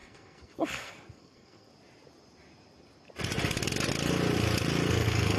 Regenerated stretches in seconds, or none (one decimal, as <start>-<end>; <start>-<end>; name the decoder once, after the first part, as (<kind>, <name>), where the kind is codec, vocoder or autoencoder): 0.0-1.7 (codec, SNAC); 4.9-5.4